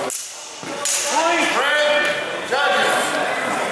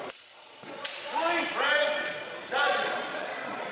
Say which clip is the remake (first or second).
second